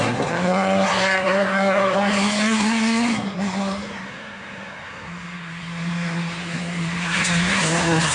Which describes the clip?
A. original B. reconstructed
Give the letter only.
B